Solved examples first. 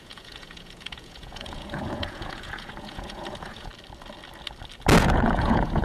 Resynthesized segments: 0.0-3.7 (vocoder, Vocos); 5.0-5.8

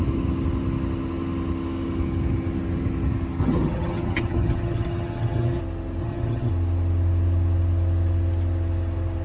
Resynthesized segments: 3.4-5.6 (vocoder, HiFi-GAN); 6.0-6.5

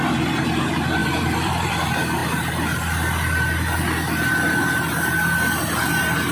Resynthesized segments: 1.0-1.7 (vocoder, BigVGAN v2)

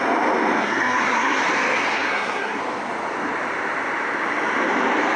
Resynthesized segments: 0.6-1.4 (codec, SNAC); 1.9-2.6

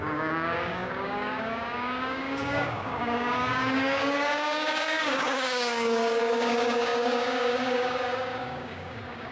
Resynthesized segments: 0.0-9.3 (codec, DAC)

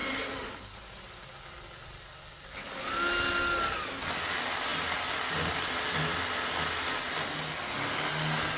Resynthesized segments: 0.0-1.2 (vocoder, BigVGAN v2)

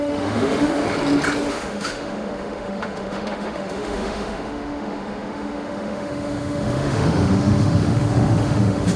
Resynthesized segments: 0.0-0.8 (autoencoder, DAC-VAE); 1.5-9.0

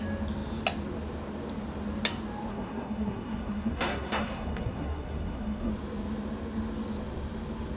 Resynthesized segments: 2.5-5.7 (codec, SNAC)